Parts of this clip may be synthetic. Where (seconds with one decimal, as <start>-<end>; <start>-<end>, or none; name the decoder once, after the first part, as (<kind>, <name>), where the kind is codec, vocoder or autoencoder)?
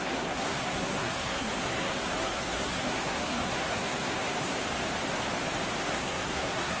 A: 0.0-4.6 (codec, SNAC); 5.9-6.8